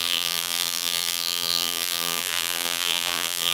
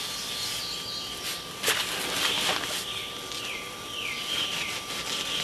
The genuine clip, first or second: second